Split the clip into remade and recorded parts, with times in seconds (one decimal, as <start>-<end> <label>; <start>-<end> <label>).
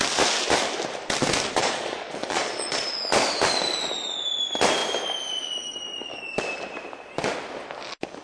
0.0-1.6 recorded; 1.6-2.8 remade; 2.8-8.2 recorded